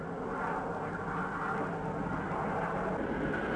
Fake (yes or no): no